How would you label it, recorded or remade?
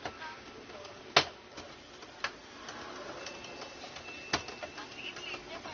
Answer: recorded